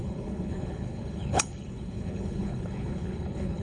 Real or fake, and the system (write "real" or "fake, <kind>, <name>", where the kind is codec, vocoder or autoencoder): fake, codec, HILCodec